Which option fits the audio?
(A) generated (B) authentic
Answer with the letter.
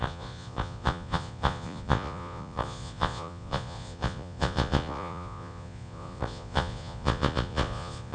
A